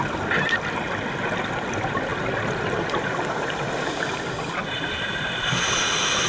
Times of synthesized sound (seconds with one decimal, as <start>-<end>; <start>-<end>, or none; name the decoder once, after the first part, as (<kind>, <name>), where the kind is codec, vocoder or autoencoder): none